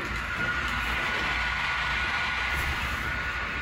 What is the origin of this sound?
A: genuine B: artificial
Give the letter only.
A